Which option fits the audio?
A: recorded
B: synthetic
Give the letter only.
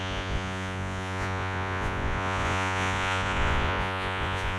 B